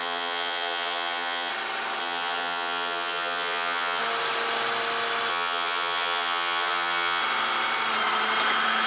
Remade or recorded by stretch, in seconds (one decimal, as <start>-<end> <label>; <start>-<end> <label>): 0.0-1.5 remade; 1.5-2.0 recorded; 2.0-4.0 remade; 4.0-5.3 recorded; 5.3-7.2 remade; 7.2-8.9 recorded